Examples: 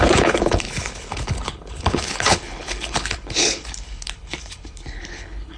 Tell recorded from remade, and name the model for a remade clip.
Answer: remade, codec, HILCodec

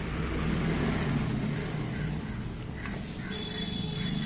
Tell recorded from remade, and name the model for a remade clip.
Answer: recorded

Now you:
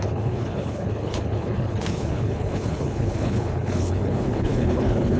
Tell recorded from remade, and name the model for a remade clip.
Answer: remade, codec, HILCodec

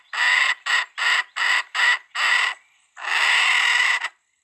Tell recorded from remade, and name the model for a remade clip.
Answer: recorded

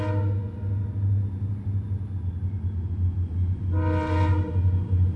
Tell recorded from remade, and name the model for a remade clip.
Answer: recorded